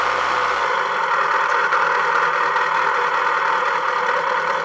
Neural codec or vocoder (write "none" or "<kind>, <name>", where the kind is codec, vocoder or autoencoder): none